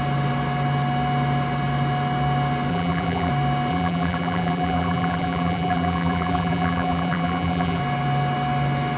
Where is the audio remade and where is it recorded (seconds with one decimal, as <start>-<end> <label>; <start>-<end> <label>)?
0.0-2.7 recorded; 2.7-3.3 remade; 3.3-3.7 recorded; 3.7-7.8 remade; 7.8-9.0 recorded